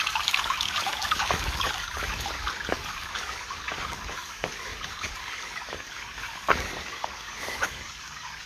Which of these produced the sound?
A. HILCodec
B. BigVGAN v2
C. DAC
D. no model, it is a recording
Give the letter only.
C